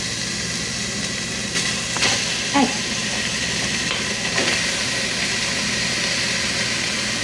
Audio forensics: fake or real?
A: real